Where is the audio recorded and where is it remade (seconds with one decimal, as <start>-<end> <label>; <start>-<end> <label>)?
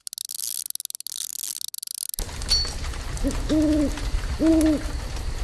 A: 0.0-5.4 recorded